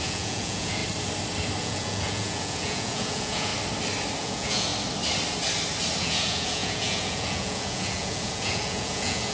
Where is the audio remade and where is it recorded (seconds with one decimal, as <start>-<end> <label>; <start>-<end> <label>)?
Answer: 0.0-0.8 remade; 0.8-1.6 recorded; 1.6-3.5 remade; 3.5-4.2 recorded; 4.2-4.7 remade; 4.7-6.0 recorded; 6.0-9.3 remade